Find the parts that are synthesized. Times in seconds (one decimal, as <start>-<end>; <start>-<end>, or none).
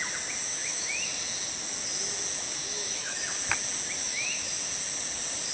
0.4-1.1; 2.6-3.2; 4.0-4.5